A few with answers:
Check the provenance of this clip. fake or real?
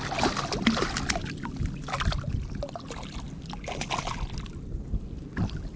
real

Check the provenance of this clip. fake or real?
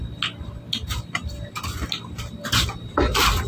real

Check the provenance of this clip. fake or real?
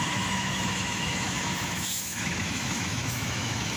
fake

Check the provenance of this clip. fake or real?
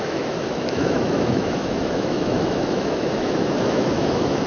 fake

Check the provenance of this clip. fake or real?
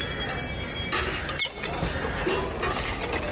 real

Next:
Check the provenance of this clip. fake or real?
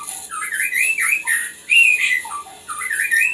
real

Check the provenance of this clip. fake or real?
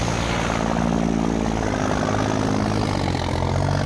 real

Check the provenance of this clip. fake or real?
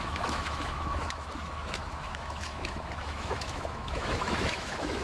fake